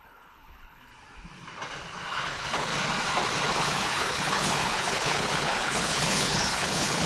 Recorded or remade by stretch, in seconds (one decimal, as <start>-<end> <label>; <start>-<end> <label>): 0.0-0.9 remade; 0.9-2.1 recorded; 2.1-2.7 remade; 2.7-3.5 recorded; 3.5-7.1 remade